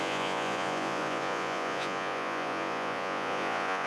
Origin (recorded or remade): remade